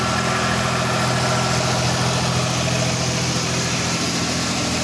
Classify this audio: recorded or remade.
recorded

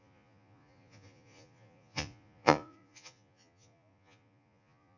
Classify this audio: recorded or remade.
remade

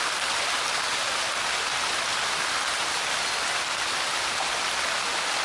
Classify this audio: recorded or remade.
recorded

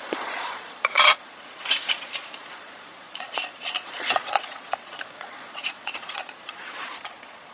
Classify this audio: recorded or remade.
remade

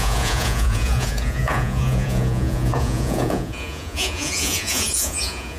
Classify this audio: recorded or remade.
remade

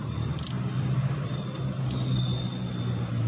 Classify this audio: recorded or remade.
recorded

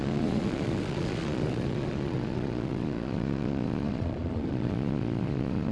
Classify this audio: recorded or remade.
remade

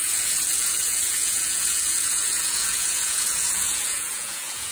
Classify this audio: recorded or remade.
remade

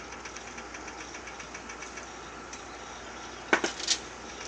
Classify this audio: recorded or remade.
recorded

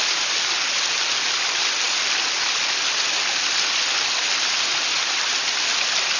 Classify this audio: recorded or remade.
recorded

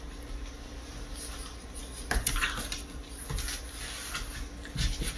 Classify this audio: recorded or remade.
recorded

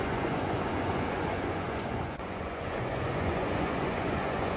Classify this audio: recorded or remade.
remade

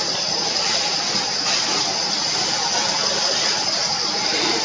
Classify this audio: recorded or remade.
recorded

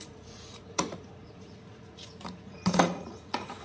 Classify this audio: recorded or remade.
remade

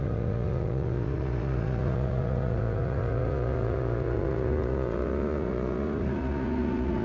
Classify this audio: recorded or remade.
remade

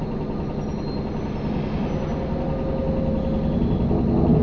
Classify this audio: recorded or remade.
recorded